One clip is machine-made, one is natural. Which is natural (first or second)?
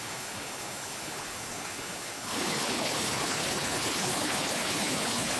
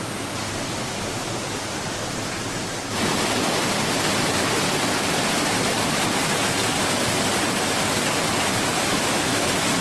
second